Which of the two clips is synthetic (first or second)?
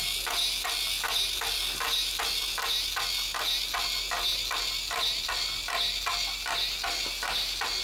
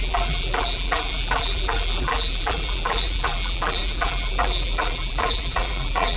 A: second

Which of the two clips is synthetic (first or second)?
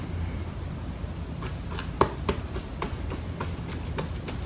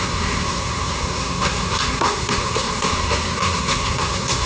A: second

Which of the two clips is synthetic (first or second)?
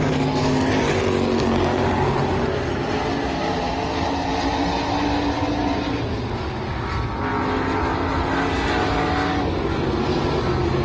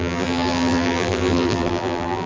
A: second